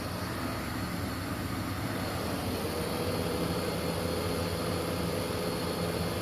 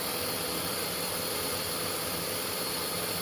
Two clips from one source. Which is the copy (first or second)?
second